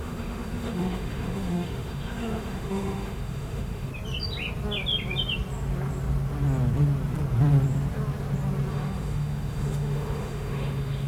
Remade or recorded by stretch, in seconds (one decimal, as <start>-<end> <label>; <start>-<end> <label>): 0.0-3.9 remade; 3.9-8.7 recorded; 8.7-11.1 remade